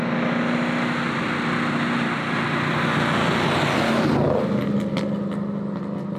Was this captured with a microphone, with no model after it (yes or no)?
yes